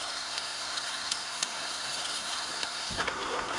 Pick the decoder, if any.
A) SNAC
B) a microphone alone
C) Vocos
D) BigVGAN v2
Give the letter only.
A